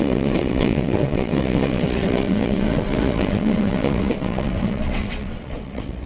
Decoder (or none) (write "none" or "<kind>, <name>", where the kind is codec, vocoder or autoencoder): vocoder, WaveNeXt